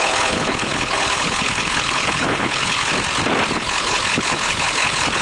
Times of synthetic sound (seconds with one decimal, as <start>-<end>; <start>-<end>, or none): 0.0-2.9; 3.5-5.2